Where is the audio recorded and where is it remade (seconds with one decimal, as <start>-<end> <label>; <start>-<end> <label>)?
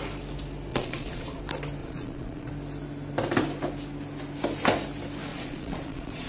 0.0-0.7 recorded; 0.7-1.4 remade; 1.4-1.8 recorded; 1.8-2.5 remade; 2.5-5.3 recorded; 5.3-6.3 remade